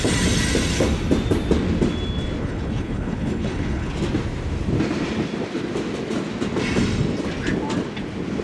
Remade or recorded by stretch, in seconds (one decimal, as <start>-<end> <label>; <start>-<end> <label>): 0.0-2.4 recorded; 2.4-3.9 remade; 3.9-8.4 recorded